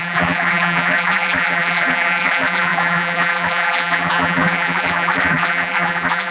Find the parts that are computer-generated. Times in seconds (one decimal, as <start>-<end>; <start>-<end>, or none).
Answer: 0.0-6.3